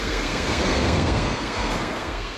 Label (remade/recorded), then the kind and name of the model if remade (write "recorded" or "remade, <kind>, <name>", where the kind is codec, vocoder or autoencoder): remade, codec, SNAC